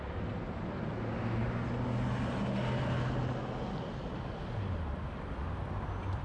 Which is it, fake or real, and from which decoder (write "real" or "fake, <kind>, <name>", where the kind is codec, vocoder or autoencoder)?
real